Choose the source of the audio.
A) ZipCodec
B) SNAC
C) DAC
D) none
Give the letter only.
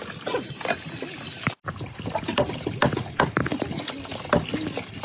D